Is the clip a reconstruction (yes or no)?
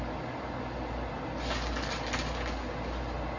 no